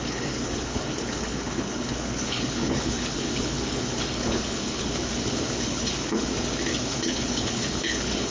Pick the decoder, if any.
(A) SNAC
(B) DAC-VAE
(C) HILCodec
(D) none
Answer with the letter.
C